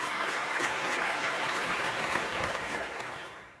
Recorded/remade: remade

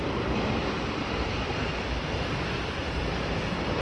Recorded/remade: recorded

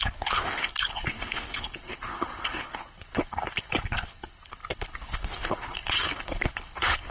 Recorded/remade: remade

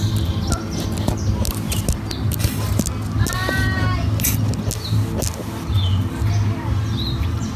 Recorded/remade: recorded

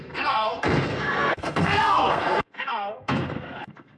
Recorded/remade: remade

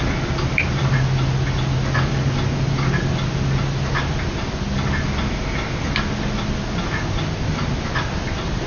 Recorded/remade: recorded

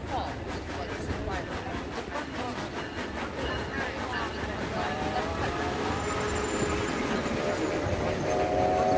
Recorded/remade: recorded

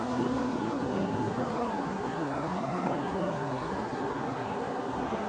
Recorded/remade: remade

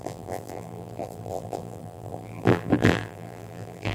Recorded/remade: remade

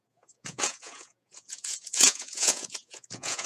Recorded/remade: remade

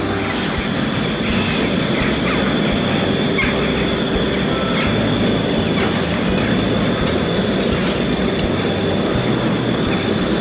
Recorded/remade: recorded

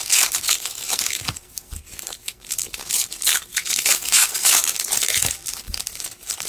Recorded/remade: remade